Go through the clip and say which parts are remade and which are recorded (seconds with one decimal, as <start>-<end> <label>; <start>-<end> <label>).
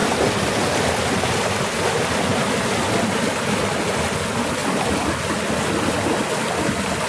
0.0-7.1 recorded